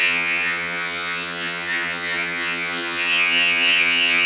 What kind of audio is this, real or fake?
fake